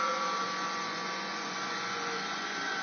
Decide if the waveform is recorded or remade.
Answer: remade